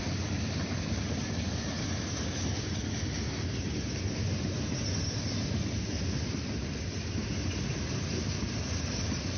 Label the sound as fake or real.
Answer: real